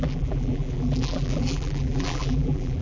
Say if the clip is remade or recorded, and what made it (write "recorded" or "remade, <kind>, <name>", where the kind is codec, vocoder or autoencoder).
remade, vocoder, BigVGAN v2